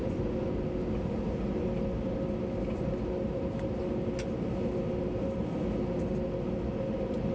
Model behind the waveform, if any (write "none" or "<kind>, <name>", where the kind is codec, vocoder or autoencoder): none